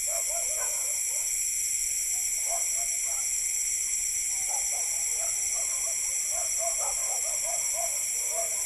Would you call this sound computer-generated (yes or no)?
no